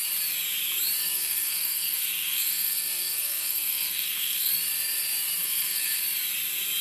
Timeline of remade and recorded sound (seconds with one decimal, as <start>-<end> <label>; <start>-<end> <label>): 0.0-1.0 recorded; 1.0-4.5 remade; 4.5-5.4 recorded; 5.4-6.0 remade; 6.0-6.8 recorded